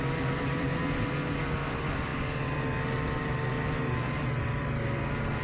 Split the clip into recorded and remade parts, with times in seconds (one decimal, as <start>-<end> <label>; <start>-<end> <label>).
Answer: 0.0-5.4 recorded